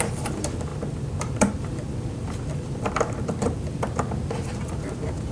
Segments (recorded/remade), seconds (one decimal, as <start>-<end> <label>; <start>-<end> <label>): 0.0-5.3 remade

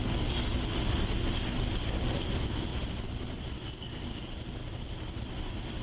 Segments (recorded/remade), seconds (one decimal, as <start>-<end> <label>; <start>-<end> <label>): 0.0-2.7 recorded; 2.7-3.6 remade; 3.6-5.8 recorded

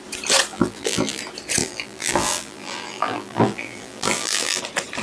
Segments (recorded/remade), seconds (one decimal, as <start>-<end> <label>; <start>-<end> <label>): 0.0-0.5 recorded; 0.5-1.2 remade; 1.2-1.6 recorded; 1.6-4.6 remade; 4.6-5.0 recorded

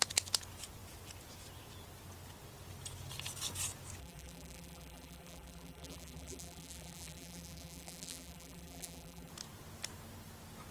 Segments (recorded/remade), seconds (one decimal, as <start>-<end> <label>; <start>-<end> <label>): 0.0-4.0 recorded; 4.0-9.3 remade; 9.3-10.7 recorded